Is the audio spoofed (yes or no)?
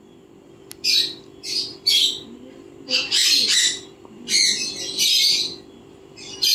no